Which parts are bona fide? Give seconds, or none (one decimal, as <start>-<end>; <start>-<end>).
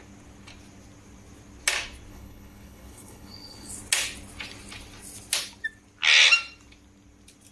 0.0-2.1; 3.7-7.5